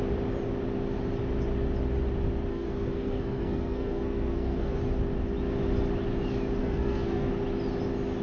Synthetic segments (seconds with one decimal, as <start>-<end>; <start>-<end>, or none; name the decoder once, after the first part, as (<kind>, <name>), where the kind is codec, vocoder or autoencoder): 2.5-4.8 (codec, SNAC); 6.6-7.3